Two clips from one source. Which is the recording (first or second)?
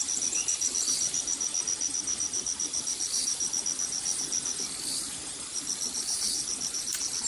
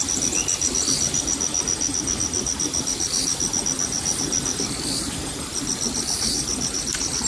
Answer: second